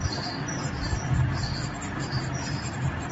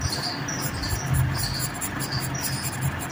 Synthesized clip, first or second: first